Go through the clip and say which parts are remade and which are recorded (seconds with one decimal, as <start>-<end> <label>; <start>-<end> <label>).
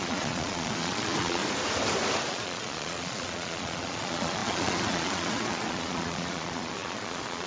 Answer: 0.0-1.4 remade; 1.4-2.3 recorded; 2.3-7.5 remade